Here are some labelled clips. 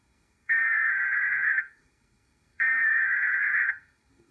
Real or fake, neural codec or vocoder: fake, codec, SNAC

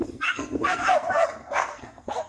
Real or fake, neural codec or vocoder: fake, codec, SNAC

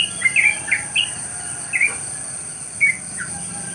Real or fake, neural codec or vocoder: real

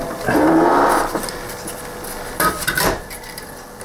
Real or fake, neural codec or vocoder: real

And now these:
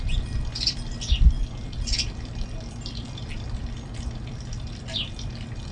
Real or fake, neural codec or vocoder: fake, vocoder, BigVGAN v2